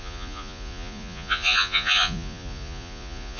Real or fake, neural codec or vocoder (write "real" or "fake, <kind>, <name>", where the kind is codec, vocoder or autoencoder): fake, vocoder, Vocos